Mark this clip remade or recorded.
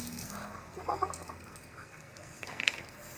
remade